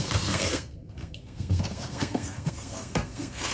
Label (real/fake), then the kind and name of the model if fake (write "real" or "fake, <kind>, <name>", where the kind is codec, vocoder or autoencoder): fake, codec, SNAC